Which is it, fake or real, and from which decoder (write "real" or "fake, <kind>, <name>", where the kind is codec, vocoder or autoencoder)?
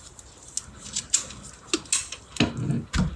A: real